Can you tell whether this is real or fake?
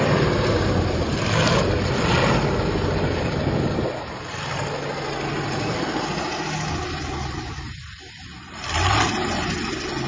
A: real